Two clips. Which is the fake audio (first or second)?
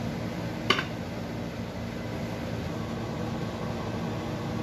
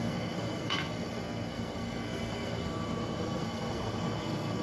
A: second